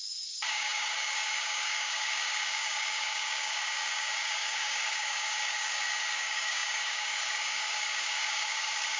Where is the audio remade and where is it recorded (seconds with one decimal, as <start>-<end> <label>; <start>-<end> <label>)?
0.0-9.0 remade